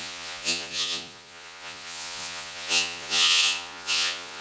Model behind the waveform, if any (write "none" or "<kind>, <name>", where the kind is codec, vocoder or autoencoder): vocoder, Vocos